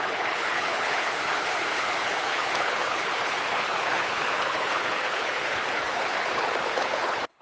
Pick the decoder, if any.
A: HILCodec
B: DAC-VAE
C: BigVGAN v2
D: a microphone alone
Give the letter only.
A